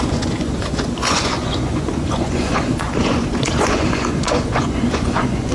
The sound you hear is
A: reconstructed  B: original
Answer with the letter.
A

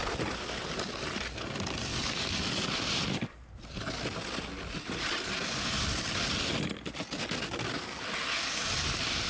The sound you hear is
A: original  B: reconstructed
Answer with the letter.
A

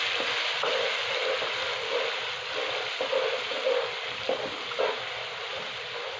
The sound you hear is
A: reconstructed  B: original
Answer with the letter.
B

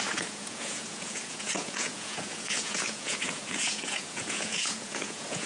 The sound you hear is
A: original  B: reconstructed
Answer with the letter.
B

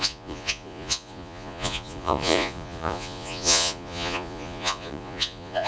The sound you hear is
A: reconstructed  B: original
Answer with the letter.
A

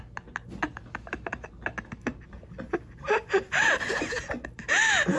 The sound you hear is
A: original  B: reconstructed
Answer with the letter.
A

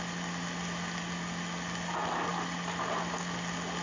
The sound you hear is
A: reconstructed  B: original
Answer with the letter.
B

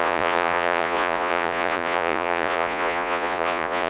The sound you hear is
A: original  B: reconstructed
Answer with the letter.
B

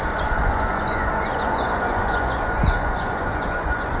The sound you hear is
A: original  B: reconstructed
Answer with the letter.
B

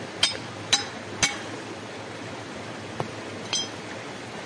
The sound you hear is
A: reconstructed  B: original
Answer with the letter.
B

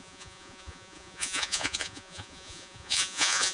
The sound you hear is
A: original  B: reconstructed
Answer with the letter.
B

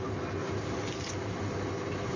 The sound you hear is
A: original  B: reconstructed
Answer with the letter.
A